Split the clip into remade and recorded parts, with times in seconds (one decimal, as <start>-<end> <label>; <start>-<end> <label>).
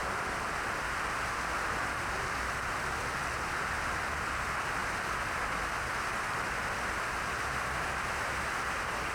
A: 0.0-9.1 recorded